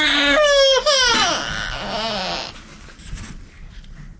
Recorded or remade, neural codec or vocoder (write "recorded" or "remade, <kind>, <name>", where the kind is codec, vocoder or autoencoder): recorded